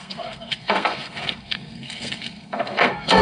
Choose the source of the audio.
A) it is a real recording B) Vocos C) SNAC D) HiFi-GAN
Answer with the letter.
C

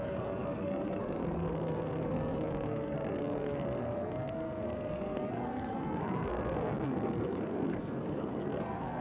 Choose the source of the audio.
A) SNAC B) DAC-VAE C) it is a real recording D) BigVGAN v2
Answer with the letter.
A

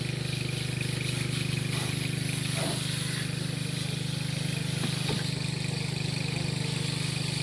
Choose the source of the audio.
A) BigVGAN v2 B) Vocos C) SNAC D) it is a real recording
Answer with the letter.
D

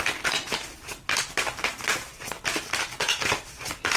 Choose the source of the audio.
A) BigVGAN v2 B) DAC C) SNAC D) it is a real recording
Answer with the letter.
D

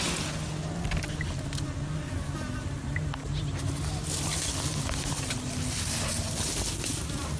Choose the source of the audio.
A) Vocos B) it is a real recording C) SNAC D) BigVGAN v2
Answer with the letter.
B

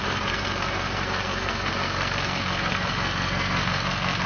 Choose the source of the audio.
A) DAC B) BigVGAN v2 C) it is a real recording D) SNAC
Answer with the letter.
D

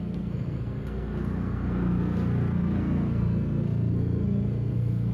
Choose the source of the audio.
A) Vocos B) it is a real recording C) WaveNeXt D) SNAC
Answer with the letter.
D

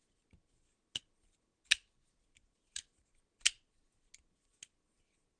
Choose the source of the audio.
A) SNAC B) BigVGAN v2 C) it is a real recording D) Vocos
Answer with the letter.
C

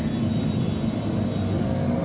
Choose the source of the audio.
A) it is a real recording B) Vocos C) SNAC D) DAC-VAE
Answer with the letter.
A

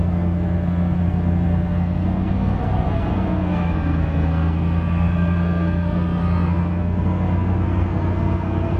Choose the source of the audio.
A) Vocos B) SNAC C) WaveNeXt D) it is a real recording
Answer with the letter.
B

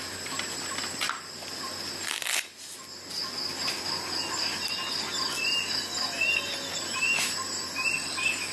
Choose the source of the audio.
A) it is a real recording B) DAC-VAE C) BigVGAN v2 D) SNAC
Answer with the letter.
A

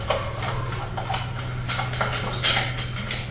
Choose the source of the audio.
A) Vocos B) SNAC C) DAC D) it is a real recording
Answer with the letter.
D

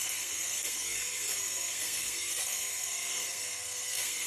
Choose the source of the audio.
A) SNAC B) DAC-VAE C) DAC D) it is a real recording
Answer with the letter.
A